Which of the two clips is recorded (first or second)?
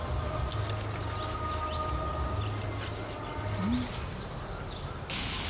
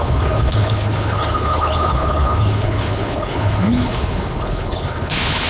first